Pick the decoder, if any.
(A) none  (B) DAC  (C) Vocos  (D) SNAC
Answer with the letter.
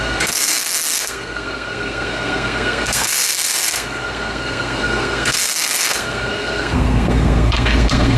D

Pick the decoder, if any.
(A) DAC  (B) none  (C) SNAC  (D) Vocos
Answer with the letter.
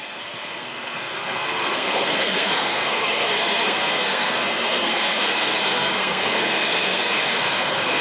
C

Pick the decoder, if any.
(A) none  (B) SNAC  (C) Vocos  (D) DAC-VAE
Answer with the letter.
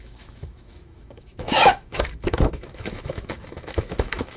D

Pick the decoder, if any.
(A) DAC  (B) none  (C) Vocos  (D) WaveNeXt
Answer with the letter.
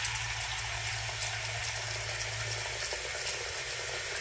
B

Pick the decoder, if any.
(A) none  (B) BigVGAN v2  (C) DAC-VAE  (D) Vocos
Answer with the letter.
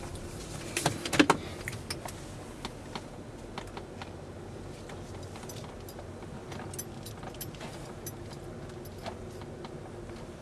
A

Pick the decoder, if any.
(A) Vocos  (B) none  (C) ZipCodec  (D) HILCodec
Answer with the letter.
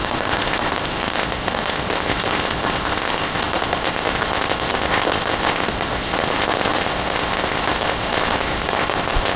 C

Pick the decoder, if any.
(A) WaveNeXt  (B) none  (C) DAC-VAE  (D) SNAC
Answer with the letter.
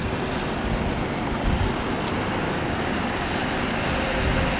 B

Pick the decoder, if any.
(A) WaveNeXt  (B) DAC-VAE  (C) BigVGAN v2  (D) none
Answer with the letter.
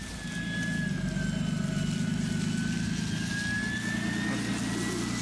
D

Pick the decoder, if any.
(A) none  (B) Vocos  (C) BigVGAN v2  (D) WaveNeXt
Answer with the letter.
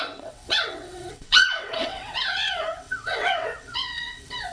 D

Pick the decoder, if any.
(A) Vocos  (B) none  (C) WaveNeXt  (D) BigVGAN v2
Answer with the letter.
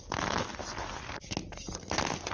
B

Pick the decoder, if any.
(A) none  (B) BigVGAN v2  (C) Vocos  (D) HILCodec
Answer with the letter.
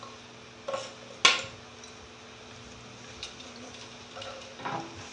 A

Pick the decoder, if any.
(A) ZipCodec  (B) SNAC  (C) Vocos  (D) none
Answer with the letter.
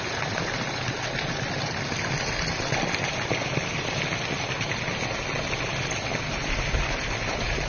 D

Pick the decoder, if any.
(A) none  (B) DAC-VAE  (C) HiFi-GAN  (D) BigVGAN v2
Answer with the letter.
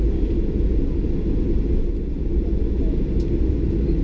A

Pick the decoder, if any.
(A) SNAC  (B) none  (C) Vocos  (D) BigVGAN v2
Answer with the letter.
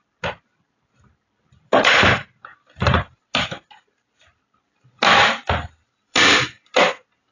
D